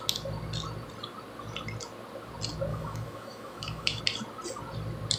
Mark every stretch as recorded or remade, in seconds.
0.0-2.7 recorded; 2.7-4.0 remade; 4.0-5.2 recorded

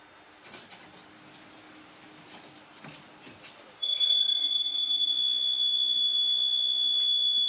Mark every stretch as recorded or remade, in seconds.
0.0-3.8 recorded; 3.8-5.1 remade; 5.1-7.5 recorded

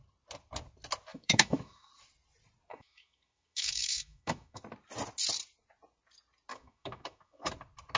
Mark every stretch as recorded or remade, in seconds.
0.0-1.1 recorded; 1.1-1.9 remade; 1.9-2.7 recorded; 2.7-4.6 remade; 4.6-6.5 recorded; 6.5-7.5 remade; 7.5-8.0 recorded

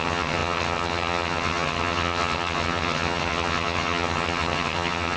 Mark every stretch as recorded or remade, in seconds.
0.0-5.2 remade

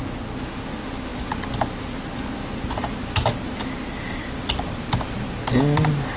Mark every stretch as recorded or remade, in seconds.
0.0-6.2 recorded

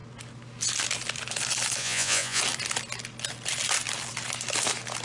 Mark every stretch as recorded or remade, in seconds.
0.0-1.8 recorded; 1.8-2.4 remade; 2.4-5.0 recorded